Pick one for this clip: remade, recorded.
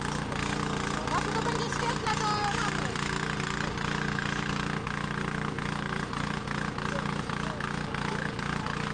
recorded